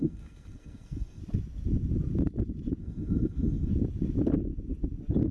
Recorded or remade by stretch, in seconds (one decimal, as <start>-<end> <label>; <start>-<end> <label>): 0.0-1.2 remade; 1.2-2.8 recorded; 2.8-3.7 remade; 3.7-5.3 recorded